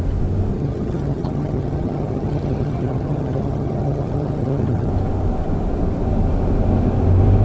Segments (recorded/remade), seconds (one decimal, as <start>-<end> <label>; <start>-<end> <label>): 0.0-0.5 recorded; 0.5-4.9 remade; 4.9-7.4 recorded